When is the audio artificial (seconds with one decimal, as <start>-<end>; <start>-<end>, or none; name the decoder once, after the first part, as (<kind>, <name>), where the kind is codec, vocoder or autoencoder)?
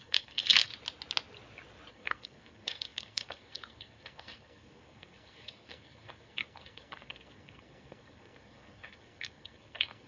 0.0-0.7 (codec, SNAC); 1.9-10.1